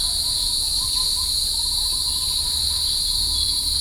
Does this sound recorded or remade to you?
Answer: remade